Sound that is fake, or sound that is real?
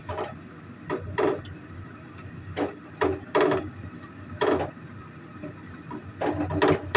real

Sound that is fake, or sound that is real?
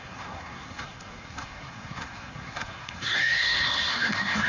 fake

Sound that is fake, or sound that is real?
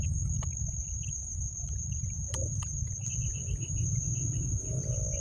real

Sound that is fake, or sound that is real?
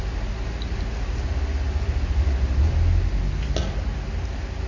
real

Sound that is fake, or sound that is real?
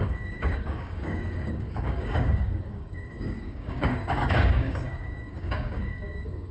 fake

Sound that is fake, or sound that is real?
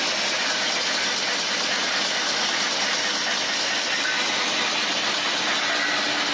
real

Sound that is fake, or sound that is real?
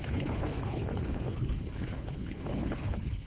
fake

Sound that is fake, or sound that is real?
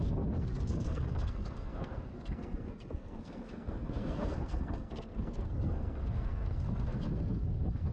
fake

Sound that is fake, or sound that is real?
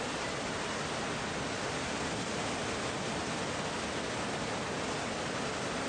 real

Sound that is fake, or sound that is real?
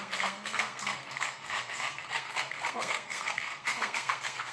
fake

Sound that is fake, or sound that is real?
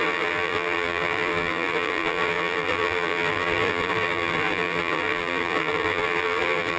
fake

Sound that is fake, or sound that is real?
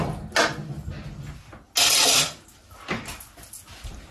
real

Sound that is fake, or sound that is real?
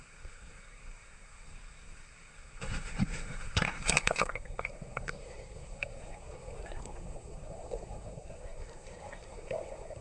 fake